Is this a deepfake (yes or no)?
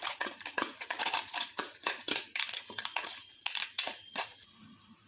yes